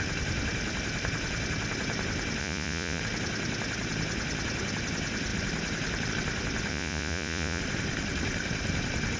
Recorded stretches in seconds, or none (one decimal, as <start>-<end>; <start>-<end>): 0.0-2.4; 3.0-6.7; 7.6-9.2